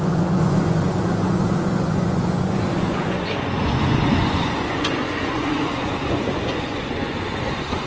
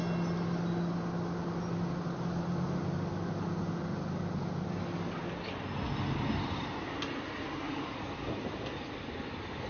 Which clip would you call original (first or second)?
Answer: second